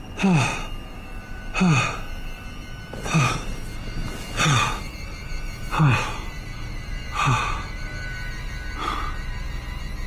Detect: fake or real real